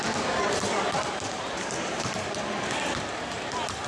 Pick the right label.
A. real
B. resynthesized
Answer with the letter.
A